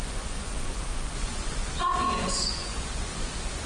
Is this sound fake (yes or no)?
yes